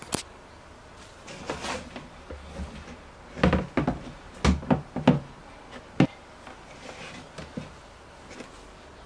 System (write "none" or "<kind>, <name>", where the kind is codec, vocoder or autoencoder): none